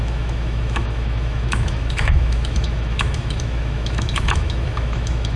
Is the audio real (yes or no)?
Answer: no